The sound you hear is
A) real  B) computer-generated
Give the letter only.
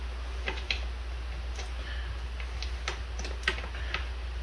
A